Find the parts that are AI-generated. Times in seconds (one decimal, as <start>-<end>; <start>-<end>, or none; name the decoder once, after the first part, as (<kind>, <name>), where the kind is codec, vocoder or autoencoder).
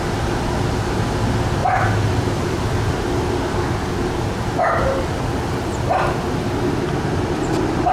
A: 1.6-5.1 (vocoder, BigVGAN v2)